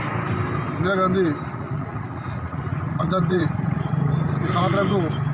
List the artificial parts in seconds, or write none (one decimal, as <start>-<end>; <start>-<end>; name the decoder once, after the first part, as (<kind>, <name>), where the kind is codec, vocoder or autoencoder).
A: 1.5-4.3 (vocoder, Vocos)

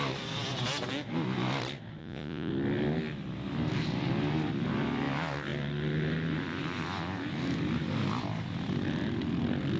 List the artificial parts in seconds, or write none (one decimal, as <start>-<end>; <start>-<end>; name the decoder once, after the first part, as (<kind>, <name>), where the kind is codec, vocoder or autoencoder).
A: 2.0-2.5 (vocoder, Vocos)

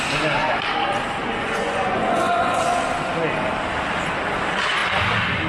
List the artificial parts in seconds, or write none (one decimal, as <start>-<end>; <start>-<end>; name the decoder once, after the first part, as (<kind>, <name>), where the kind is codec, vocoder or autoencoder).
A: 1.2-2.6 (vocoder, Vocos)

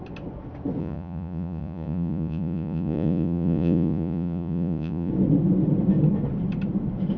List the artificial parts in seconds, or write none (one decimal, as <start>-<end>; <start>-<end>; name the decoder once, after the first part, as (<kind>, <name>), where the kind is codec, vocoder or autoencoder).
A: 0.8-5.1 (vocoder, Vocos)

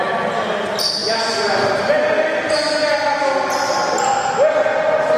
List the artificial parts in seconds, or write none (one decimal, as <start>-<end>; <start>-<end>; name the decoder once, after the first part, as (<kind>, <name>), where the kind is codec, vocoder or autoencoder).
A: none

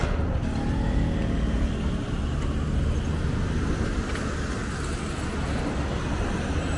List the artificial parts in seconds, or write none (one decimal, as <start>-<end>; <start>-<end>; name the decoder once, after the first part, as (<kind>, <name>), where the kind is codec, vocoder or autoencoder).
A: none